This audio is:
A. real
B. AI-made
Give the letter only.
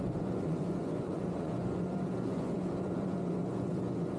B